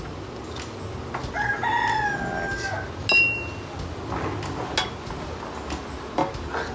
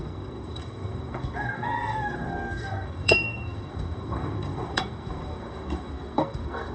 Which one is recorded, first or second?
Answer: first